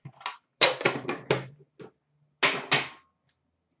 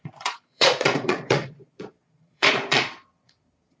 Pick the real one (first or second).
first